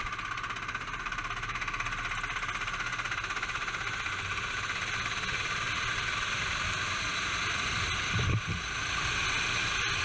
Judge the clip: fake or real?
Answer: real